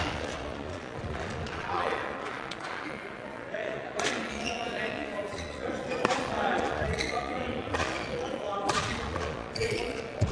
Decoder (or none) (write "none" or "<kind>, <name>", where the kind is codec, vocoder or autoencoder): vocoder, Vocos